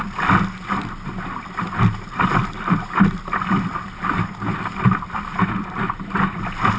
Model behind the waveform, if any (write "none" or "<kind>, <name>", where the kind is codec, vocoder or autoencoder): none